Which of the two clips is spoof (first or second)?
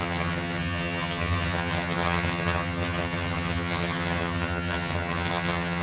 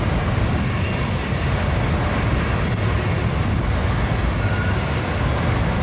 first